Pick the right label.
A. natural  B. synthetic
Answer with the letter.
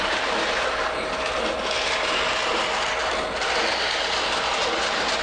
A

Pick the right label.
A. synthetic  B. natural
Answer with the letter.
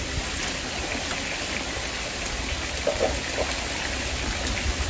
B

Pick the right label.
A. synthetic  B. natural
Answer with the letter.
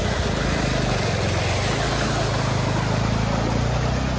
B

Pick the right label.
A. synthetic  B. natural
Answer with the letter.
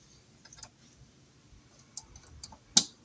B